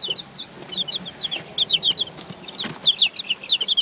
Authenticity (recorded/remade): recorded